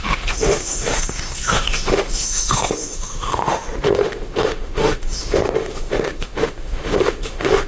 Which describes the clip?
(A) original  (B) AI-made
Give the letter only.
B